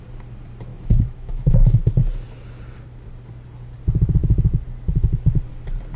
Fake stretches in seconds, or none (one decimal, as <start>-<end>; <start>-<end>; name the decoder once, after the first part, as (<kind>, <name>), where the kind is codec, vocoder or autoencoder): 0.7-1.8 (autoencoder, DAC-VAE)